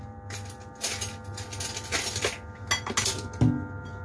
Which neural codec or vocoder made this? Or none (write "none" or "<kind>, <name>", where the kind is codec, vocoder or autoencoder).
none